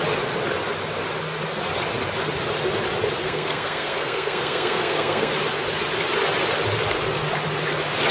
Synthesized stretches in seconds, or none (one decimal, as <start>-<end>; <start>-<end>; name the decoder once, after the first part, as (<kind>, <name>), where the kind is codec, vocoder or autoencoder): 3.2-5.3 (codec, SNAC)